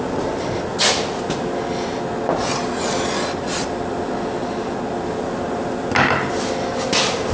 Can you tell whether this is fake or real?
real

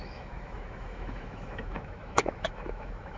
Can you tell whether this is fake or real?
fake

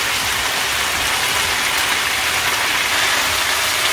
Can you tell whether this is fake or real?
real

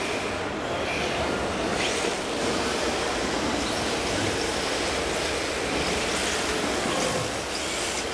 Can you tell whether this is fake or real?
real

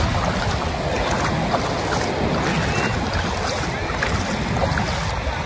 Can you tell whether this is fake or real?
real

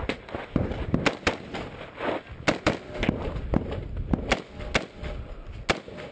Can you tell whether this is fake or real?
real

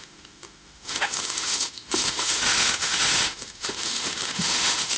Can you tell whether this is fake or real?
fake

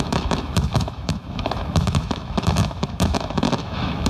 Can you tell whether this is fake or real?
fake